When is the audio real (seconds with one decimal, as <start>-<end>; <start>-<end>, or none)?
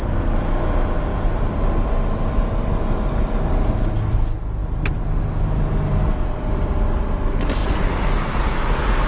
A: 0.0-9.1